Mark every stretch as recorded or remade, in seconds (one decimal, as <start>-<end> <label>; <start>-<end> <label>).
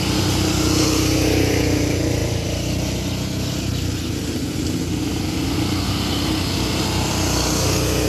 0.0-8.1 recorded